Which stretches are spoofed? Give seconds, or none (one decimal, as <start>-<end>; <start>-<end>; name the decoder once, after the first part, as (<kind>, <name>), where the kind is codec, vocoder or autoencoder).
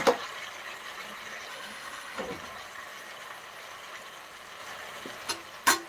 1.5-2.2 (autoencoder, DAC-VAE)